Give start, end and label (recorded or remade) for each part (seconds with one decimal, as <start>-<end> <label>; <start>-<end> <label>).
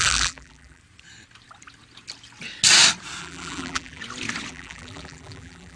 0.0-0.8 remade; 0.8-3.2 recorded; 3.2-4.0 remade; 4.0-4.5 recorded; 4.5-5.8 remade